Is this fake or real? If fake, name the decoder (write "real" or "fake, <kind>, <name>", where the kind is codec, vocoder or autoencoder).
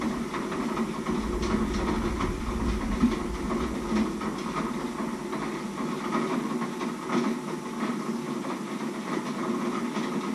real